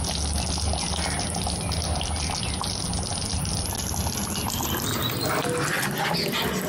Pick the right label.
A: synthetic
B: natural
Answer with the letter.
B